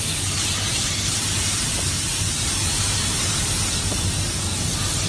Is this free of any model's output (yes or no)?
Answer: no